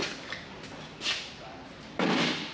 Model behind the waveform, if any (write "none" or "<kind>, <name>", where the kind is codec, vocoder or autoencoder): none